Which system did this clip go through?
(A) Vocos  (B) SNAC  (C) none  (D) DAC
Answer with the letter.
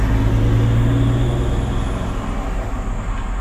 C